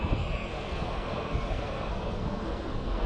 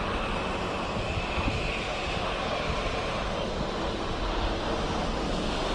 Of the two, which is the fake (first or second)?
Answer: first